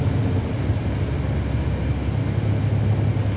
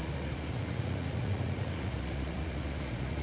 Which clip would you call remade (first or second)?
second